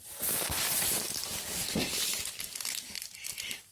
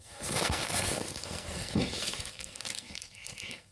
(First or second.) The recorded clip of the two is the first